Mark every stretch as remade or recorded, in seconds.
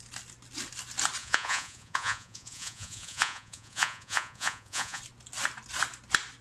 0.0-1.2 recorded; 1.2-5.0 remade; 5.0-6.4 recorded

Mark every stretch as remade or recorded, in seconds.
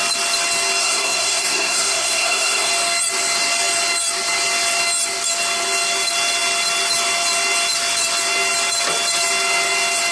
0.0-0.8 recorded; 0.8-2.7 remade; 2.7-10.1 recorded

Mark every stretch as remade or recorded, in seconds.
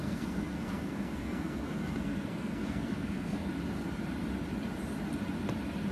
0.0-3.5 remade; 3.5-5.9 recorded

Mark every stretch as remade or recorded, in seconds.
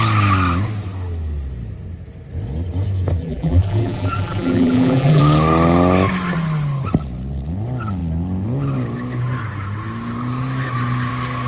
0.0-3.2 recorded; 3.2-5.2 remade; 5.2-11.5 recorded